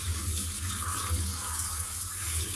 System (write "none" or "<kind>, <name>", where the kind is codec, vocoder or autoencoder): codec, DAC